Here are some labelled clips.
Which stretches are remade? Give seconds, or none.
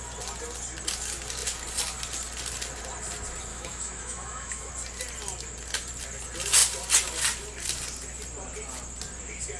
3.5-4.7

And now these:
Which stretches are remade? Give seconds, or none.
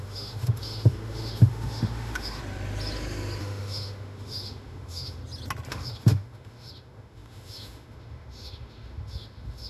0.0-2.4; 3.4-5.2; 5.7-9.7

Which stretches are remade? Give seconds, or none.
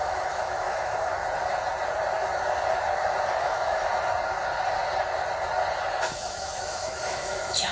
0.0-1.1; 3.4-3.9; 6.0-7.7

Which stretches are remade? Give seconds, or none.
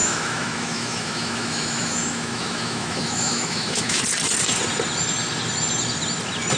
0.0-4.0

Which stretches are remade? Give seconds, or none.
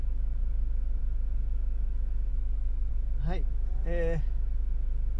2.3-2.9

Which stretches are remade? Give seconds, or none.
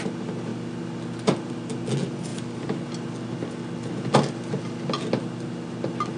none